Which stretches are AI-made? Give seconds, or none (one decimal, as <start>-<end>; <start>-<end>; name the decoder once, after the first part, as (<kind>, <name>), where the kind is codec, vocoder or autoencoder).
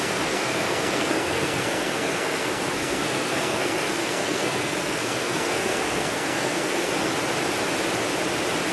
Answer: 0.0-7.1 (codec, SNAC)